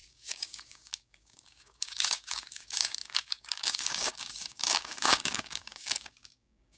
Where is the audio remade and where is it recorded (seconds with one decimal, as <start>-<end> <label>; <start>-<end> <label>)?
0.0-6.8 remade